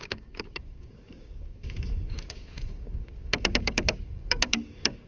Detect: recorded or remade remade